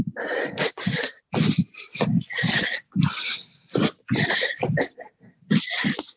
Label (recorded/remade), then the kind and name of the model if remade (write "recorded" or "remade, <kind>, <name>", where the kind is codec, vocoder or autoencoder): recorded